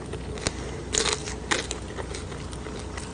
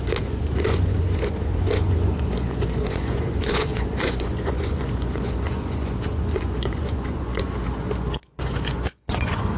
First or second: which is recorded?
first